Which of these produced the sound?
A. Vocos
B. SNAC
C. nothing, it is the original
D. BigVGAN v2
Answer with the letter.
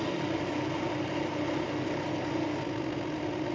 C